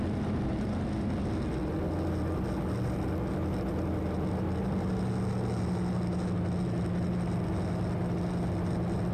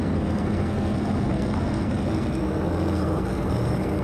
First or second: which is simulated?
second